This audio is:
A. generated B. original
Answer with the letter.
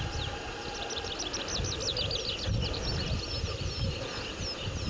B